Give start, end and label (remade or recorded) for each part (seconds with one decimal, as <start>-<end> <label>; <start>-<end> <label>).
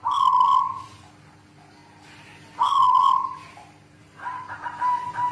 0.0-5.3 recorded